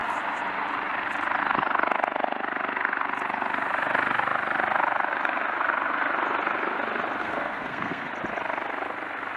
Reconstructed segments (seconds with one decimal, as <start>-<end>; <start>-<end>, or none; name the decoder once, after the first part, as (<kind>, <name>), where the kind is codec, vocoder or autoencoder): 7.2-8.1 (codec, SNAC)